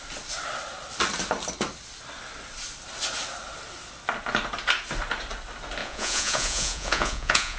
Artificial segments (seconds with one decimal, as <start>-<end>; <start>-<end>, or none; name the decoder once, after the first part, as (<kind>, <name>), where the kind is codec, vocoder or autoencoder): 5.8-7.6 (vocoder, Vocos)